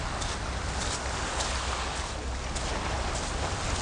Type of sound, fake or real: real